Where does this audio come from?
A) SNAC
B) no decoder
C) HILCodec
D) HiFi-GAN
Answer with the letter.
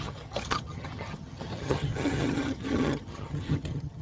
D